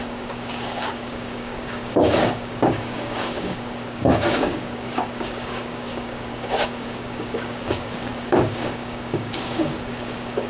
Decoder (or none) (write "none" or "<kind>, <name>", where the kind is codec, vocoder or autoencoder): codec, DAC